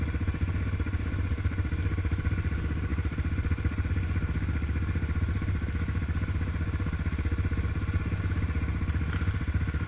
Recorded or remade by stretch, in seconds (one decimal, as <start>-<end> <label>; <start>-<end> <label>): 0.0-9.9 recorded